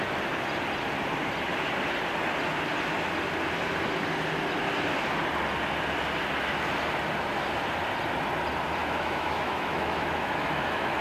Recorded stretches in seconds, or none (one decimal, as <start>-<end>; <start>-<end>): 0.0-8.8